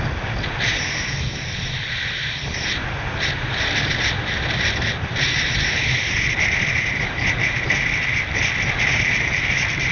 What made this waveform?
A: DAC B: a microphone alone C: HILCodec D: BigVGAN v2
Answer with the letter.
B